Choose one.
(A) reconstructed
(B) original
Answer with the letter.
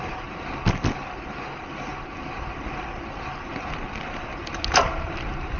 B